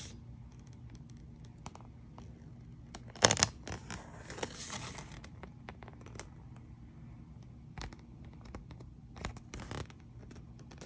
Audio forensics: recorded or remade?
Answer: recorded